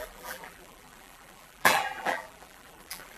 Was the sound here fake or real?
fake